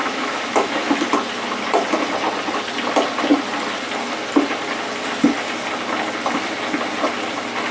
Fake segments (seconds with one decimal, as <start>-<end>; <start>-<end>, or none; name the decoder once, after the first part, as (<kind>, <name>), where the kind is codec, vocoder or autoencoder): 0.0-0.9 (autoencoder, DAC-VAE)